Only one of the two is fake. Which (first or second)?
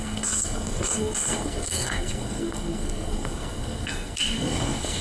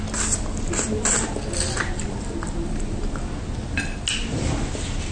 first